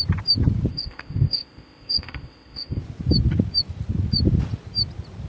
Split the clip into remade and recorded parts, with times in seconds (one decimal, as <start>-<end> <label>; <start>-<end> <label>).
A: 0.0-0.7 recorded; 0.7-2.8 remade; 2.8-5.3 recorded